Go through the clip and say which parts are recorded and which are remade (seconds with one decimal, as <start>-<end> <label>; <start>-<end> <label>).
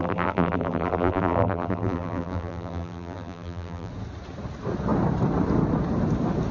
0.0-3.9 remade; 3.9-6.5 recorded